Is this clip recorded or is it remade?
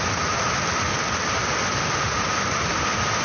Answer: recorded